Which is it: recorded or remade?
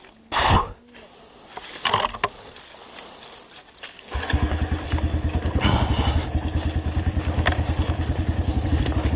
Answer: recorded